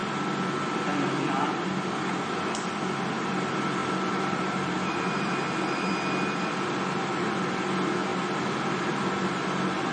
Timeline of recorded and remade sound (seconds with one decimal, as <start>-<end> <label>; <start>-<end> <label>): 0.0-3.8 recorded; 3.8-5.9 remade; 5.9-8.1 recorded; 8.1-9.9 remade